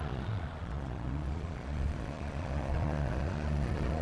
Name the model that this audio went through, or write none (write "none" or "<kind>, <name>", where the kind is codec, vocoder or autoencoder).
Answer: vocoder, Vocos